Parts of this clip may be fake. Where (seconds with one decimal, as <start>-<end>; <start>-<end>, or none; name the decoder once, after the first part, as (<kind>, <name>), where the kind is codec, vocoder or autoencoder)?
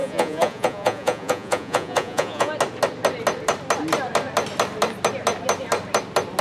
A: 0.0-2.5 (vocoder, Vocos)